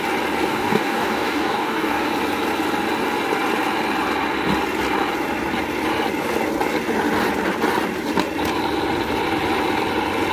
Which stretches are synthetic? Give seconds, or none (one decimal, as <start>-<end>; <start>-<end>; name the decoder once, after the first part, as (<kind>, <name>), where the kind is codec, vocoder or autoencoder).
0.5-2.1 (codec, DAC)